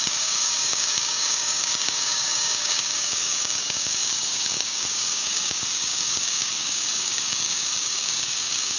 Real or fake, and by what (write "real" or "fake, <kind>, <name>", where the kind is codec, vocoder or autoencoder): fake, codec, DAC